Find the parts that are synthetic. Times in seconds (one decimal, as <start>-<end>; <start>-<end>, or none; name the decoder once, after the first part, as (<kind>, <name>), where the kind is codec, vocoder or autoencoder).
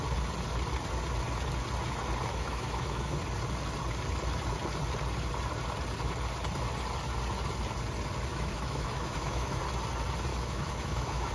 2.3-3.2 (autoencoder, DAC-VAE); 8.3-9.6; 10.3-11.3